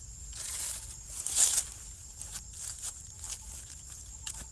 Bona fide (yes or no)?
yes